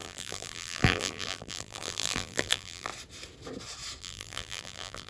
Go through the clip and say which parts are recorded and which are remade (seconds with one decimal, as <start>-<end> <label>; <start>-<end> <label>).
0.0-2.9 remade; 2.9-4.0 recorded; 4.0-5.1 remade